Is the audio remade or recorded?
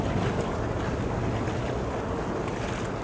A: recorded